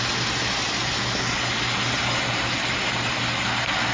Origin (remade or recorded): recorded